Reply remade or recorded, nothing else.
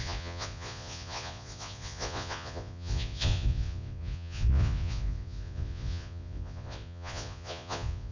remade